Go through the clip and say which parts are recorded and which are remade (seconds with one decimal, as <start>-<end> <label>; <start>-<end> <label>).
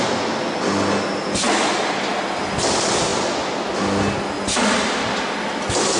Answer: 0.0-6.0 recorded